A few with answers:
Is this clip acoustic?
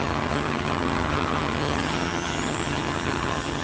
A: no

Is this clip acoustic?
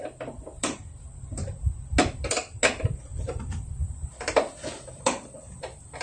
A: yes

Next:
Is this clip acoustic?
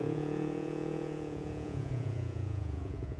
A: no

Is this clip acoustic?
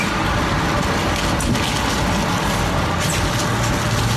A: yes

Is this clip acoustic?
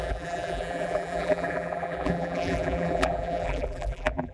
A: no